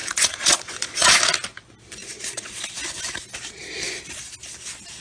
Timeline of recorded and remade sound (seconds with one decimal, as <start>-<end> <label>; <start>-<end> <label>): 0.0-1.2 remade; 1.2-2.0 recorded; 2.0-2.6 remade; 2.6-5.0 recorded